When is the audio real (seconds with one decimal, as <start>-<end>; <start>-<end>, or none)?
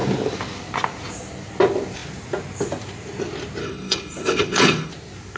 0.0-3.6; 4.9-5.4